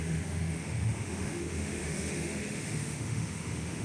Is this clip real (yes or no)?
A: no